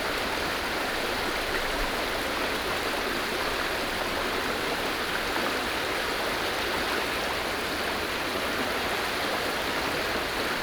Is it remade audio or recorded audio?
recorded